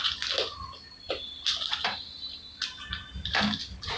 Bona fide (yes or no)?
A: yes